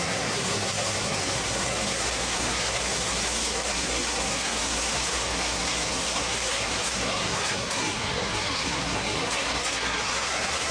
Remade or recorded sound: remade